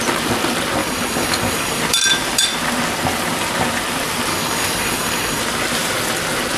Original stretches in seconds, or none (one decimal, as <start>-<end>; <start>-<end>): 0.0-0.8; 1.8-4.3; 5.4-6.6